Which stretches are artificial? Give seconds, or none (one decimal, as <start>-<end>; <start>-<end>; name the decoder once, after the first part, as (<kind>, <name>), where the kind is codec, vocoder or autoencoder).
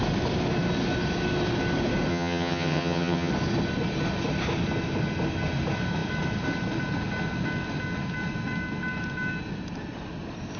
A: 2.1-3.3 (vocoder, HiFi-GAN)